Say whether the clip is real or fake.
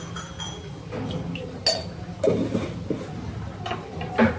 real